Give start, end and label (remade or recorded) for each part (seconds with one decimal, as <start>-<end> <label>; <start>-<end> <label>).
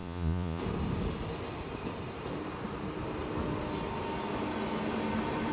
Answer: 0.0-0.6 remade; 0.6-5.5 recorded